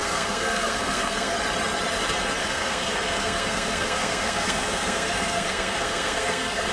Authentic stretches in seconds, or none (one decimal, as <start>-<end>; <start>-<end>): 1.3-2.4